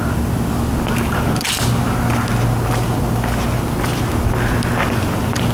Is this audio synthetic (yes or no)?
no